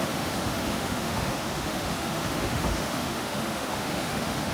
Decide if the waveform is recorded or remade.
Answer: remade